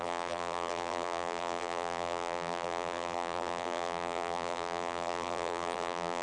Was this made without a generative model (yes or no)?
no